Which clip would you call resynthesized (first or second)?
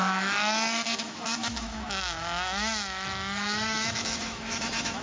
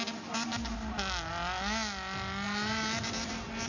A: first